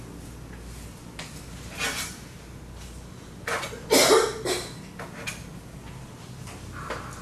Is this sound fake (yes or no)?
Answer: no